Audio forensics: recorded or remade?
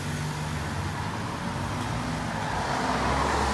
recorded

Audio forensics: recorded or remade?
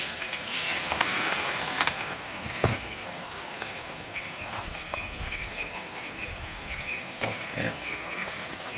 remade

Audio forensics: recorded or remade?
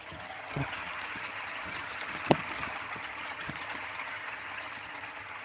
remade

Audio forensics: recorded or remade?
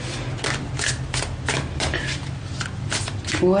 recorded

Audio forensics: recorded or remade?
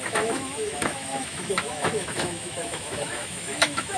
remade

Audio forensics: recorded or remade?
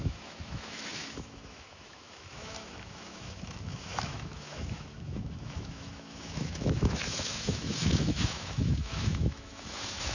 remade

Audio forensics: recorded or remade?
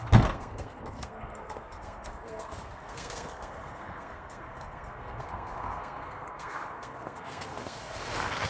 remade